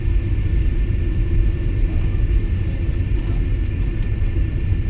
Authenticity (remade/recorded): recorded